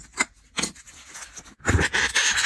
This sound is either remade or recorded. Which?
recorded